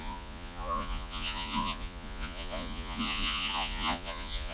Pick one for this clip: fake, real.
fake